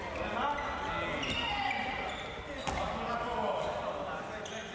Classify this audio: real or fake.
real